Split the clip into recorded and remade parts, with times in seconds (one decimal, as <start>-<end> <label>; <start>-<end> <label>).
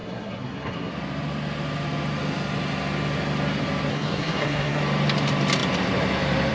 0.0-0.9 remade; 0.9-3.9 recorded; 3.9-4.8 remade; 4.8-6.5 recorded